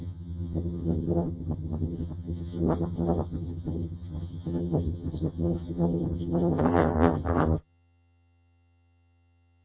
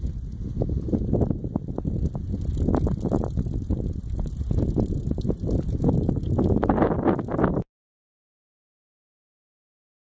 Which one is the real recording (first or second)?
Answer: second